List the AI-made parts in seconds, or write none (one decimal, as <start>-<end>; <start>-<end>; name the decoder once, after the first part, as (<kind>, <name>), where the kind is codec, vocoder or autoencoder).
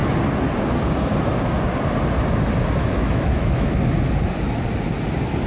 2.8-3.8 (autoencoder, DAC-VAE)